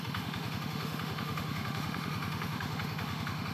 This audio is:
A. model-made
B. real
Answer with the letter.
A